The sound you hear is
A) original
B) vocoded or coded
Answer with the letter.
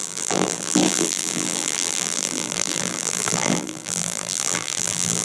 B